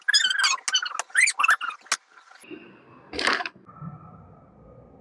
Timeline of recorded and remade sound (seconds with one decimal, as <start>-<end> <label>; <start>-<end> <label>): 0.0-5.0 recorded